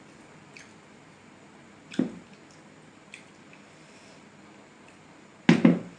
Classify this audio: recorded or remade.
recorded